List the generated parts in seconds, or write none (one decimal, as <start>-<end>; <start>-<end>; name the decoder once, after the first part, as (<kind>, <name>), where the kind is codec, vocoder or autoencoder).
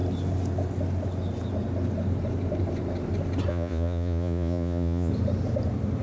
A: 3.5-5.1 (vocoder, Vocos)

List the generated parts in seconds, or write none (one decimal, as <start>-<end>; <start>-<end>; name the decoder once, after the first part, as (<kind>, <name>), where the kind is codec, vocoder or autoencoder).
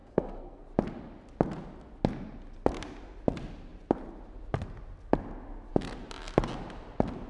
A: 0.0-0.6 (codec, SNAC)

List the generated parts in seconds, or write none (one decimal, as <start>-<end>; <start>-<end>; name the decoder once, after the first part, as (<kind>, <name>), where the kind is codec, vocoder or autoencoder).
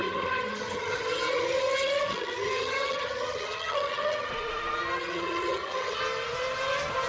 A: 0.0-4.3 (vocoder, HiFi-GAN); 5.0-6.0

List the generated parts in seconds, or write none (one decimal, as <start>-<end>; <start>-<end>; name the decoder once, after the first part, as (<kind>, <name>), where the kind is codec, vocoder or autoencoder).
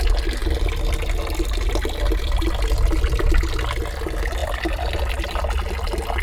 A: 0.4-3.5 (vocoder, BigVGAN v2); 4.4-5.0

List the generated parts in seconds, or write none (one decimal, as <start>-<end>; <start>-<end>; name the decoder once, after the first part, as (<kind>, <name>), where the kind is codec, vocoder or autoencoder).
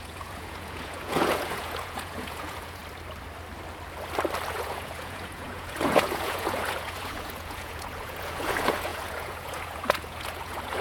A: 0.0-2.8 (vocoder, Vocos); 4.5-10.8